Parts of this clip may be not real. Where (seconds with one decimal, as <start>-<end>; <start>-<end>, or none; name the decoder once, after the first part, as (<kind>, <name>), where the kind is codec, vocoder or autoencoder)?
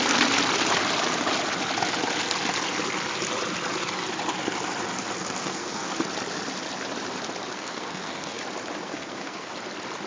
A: 5.4-5.9 (codec, SNAC); 7.5-8.4; 8.8-9.5